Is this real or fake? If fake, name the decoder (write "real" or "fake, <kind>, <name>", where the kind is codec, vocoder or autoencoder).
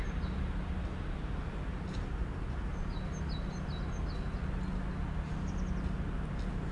real